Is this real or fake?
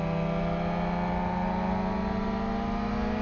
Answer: real